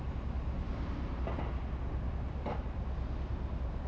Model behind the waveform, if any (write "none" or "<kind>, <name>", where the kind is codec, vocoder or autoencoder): none